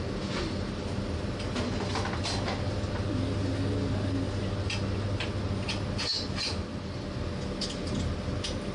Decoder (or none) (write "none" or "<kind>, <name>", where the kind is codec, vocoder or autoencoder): none